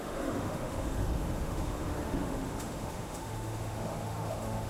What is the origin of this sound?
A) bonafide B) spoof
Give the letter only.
B